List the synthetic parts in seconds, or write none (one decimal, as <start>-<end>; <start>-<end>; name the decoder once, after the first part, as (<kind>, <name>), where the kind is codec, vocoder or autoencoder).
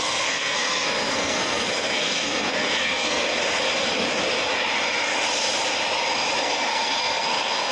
0.0-3.2 (codec, SNAC); 6.4-7.7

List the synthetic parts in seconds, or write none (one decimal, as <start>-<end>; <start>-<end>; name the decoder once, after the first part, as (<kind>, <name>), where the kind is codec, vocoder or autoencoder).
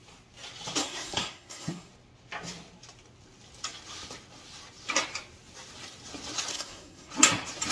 0.8-1.9 (codec, SNAC); 6.5-7.1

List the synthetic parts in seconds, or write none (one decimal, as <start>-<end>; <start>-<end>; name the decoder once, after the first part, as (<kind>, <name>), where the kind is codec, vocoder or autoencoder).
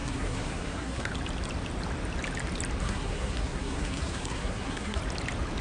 0.0-1.1 (codec, SNAC); 2.8-5.0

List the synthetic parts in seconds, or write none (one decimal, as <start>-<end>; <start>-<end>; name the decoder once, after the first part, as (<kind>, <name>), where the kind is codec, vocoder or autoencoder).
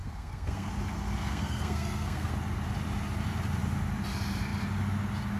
0.0-0.7 (codec, SNAC); 1.2-2.3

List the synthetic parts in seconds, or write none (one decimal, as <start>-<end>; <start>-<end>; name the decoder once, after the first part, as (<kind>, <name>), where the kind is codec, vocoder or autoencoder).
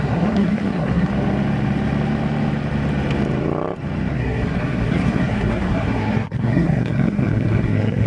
0.0-1.1 (codec, SNAC); 4.1-8.1